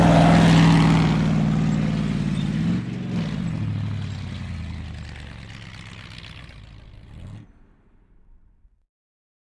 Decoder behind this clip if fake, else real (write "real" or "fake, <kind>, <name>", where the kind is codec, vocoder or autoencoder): real